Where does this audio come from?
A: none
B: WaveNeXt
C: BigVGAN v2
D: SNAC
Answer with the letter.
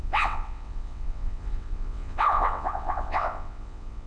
B